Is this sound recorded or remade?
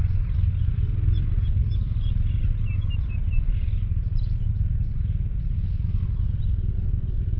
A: recorded